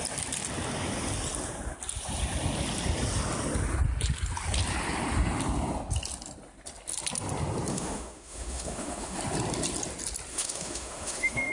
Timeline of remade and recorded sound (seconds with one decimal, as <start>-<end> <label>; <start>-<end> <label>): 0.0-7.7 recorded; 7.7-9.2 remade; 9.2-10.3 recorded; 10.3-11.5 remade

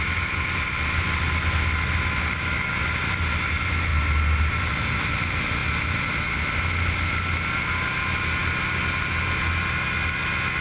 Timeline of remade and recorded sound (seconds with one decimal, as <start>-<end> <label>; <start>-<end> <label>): 0.0-10.6 recorded

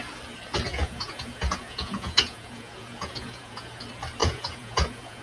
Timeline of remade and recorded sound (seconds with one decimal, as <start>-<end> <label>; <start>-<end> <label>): 0.0-0.7 recorded; 0.7-3.8 remade; 3.8-4.2 recorded; 4.2-5.2 remade

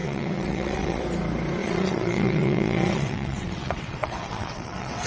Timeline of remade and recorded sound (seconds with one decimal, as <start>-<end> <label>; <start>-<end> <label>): 0.0-1.0 remade; 1.0-1.6 recorded; 1.6-5.1 remade